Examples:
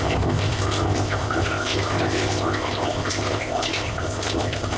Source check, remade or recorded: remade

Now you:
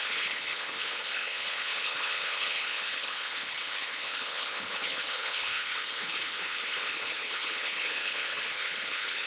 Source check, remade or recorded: remade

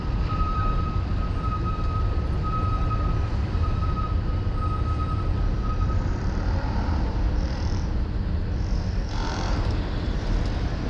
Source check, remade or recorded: remade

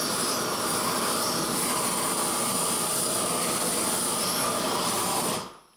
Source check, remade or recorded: recorded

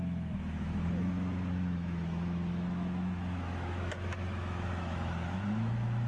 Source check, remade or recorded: remade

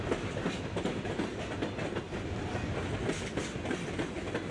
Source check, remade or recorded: recorded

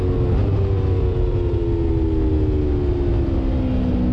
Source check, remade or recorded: recorded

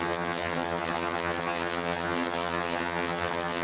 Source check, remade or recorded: remade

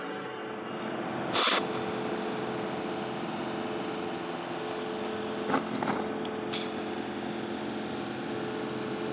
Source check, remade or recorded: recorded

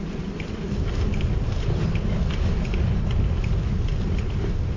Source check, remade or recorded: recorded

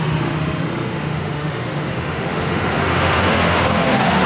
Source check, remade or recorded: remade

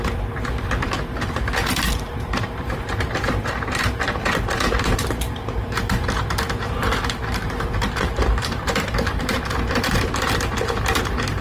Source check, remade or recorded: remade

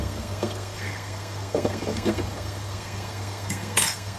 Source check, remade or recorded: remade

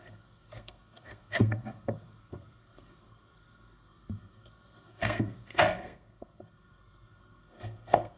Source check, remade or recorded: remade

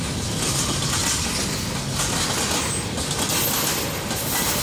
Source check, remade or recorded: recorded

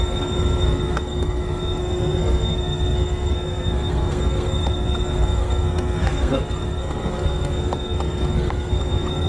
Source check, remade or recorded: remade